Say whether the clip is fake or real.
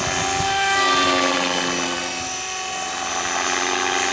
real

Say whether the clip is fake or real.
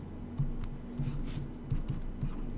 real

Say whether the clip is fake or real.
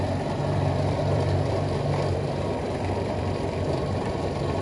fake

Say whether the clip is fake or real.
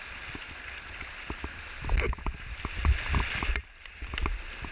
real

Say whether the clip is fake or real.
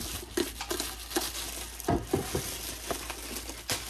real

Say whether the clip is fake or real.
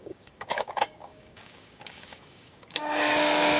fake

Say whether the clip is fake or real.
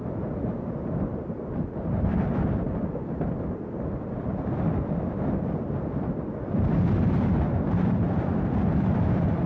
real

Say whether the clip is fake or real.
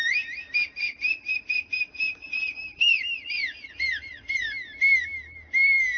fake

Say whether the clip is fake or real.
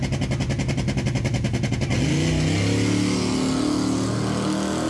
real